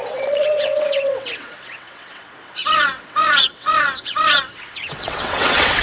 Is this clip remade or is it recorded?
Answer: remade